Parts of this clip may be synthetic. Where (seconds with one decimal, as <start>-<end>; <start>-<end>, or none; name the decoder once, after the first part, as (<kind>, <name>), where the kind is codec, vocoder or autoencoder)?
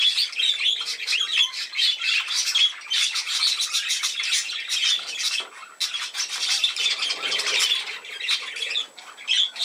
1.3-2.6 (vocoder, BigVGAN v2)